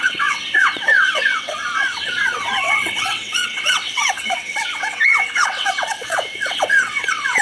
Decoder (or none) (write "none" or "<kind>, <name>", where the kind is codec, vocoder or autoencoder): vocoder, WaveNeXt